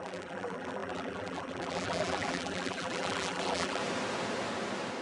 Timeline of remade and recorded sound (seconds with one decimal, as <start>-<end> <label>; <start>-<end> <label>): 0.0-3.8 remade; 3.8-5.0 recorded